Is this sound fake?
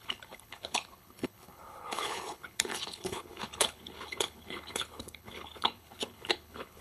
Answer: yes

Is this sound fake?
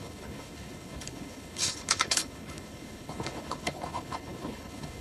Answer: yes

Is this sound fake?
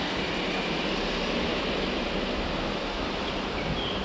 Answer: no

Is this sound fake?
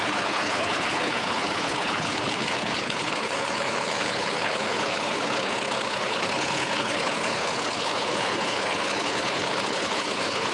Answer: yes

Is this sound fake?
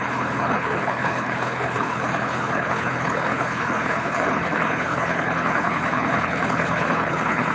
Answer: yes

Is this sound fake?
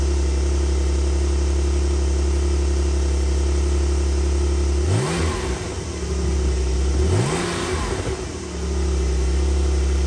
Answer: no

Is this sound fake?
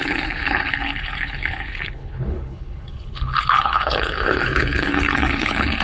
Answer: yes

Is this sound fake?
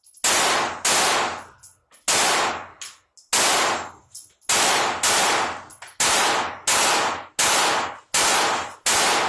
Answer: no